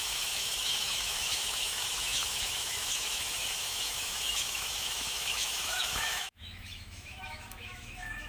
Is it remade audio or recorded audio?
remade